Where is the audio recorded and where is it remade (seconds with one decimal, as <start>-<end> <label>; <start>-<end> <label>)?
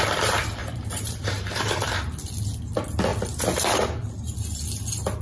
0.0-0.6 recorded; 0.6-2.0 remade; 2.0-5.2 recorded